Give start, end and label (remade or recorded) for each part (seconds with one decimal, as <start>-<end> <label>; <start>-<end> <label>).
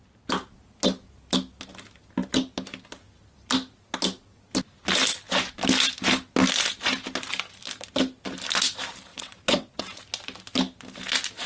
0.0-9.1 recorded; 9.1-9.8 remade; 9.8-11.5 recorded